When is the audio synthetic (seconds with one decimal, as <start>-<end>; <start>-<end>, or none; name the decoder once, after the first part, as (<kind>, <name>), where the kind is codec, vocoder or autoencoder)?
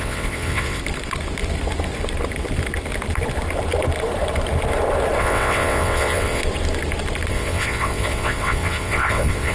0.0-0.8 (vocoder, WaveNeXt); 5.2-6.4; 7.3-9.5